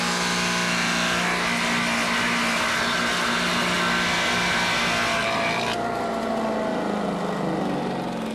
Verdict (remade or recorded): recorded